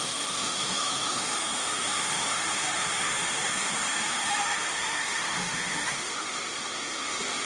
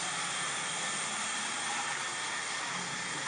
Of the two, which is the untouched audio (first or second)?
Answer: second